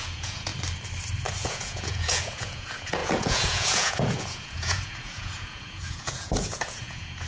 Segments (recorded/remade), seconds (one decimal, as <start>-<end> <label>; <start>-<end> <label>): 0.0-0.5 remade; 0.5-1.3 recorded; 1.3-7.3 remade